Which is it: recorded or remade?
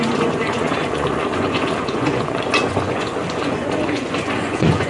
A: remade